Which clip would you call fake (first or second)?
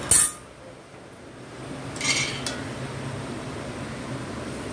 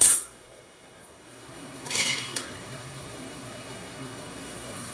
second